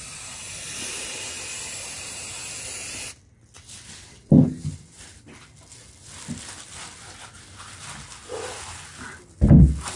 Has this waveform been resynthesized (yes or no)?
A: no